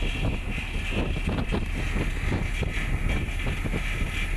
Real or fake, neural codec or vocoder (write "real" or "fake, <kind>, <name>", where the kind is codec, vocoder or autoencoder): real